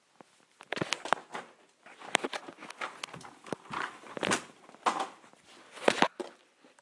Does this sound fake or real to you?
real